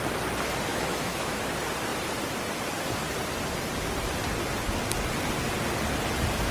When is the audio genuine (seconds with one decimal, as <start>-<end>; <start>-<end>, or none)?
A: 0.0-0.7; 1.4-6.5